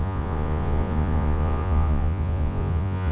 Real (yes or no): no